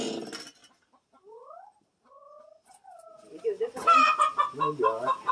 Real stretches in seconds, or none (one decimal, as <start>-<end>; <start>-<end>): 0.0-5.3